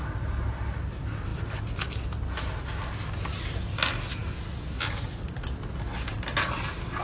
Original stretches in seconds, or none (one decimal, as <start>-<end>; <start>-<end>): 0.0-7.0

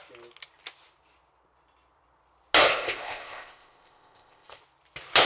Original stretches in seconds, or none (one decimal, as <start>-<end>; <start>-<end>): 0.0-2.7; 4.6-5.2